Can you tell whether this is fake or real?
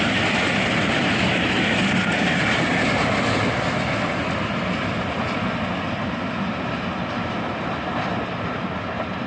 real